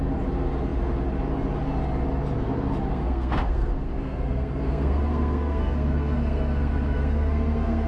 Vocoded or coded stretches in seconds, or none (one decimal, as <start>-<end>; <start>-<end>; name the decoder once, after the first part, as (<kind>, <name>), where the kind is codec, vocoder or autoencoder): 2.9-7.9 (codec, SNAC)